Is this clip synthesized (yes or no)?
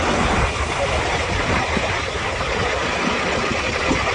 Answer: no